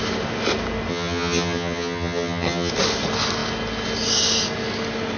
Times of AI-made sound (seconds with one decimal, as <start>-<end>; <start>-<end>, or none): 0.9-2.7

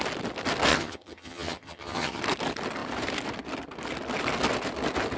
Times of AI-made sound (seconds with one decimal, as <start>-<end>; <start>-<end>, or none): 0.7-2.2

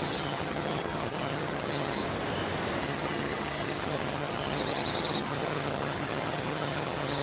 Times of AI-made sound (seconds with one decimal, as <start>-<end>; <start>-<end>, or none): 0.0-2.0; 2.8-7.2

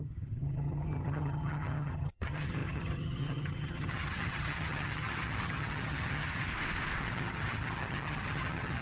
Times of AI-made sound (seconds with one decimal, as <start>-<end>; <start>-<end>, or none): 0.0-6.5; 7.0-8.8

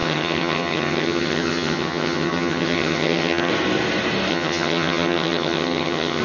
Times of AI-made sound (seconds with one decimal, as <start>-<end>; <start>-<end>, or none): 0.0-3.5; 4.3-6.2